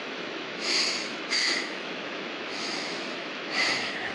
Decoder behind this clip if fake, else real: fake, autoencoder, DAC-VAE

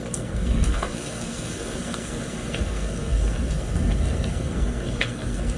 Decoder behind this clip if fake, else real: fake, codec, SNAC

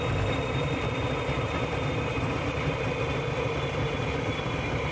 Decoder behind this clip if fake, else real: real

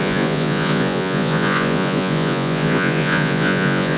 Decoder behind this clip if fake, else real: fake, vocoder, Vocos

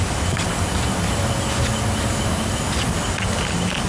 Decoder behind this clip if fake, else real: real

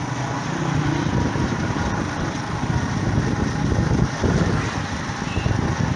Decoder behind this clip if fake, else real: real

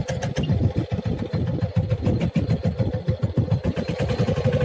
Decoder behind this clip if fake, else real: real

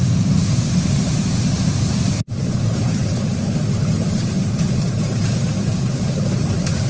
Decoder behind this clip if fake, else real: fake, vocoder, BigVGAN v2